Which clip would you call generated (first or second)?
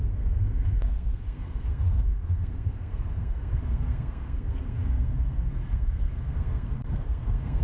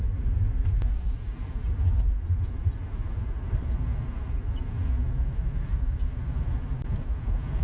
first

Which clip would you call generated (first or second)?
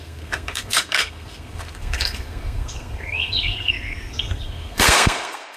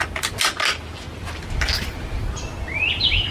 first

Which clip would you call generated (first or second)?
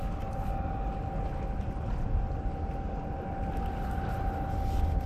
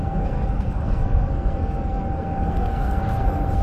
second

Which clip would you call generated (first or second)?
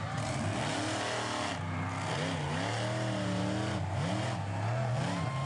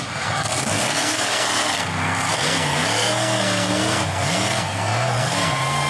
second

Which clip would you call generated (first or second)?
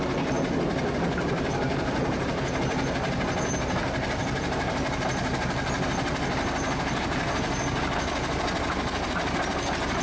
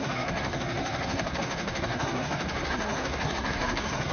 second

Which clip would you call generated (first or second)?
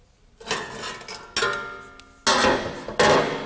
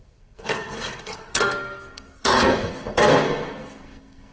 second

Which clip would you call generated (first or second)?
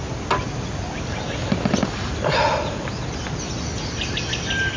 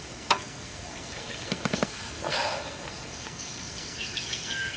second